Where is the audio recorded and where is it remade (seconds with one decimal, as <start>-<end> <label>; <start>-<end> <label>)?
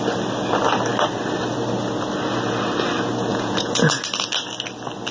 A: 0.0-3.3 recorded; 3.3-3.9 remade; 3.9-5.1 recorded